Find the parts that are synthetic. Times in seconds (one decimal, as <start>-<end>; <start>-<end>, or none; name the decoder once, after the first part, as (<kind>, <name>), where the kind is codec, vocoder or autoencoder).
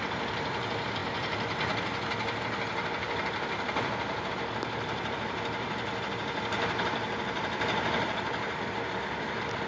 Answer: none